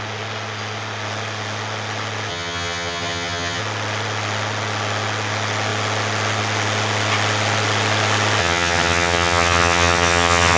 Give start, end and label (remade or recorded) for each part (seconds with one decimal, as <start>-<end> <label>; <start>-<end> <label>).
0.0-2.3 recorded; 2.3-3.6 remade; 3.6-8.4 recorded; 8.4-10.6 remade